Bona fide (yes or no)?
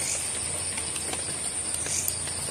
yes